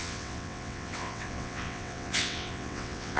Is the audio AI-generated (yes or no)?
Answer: yes